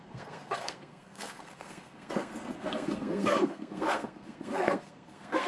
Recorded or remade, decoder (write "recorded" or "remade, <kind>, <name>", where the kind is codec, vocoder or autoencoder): remade, codec, SNAC